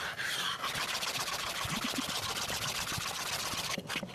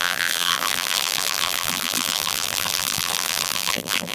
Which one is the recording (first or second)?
first